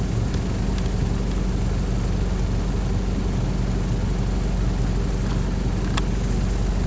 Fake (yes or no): no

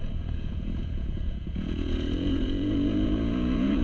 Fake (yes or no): yes